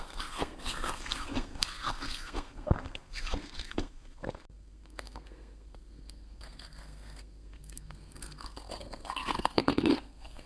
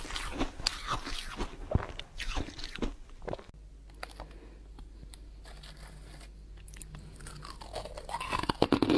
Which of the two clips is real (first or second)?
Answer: second